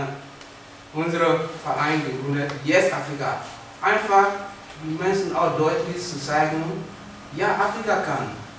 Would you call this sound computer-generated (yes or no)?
no